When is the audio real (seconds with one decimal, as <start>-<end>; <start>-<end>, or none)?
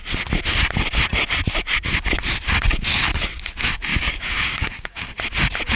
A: 0.0-3.9; 5.0-5.8